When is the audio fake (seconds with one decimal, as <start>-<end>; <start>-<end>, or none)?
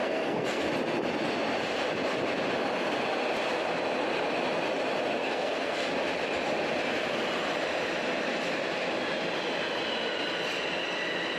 0.0-0.6; 5.2-5.9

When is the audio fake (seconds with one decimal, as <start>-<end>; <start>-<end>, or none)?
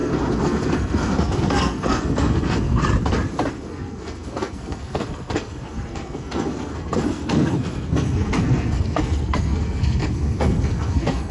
0.0-2.8; 3.5-11.3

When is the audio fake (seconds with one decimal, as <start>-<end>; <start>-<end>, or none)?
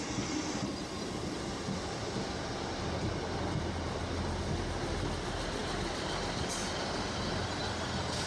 none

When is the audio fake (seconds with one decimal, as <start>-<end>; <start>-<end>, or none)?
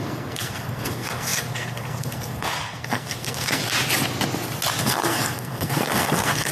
0.0-3.6; 4.8-6.5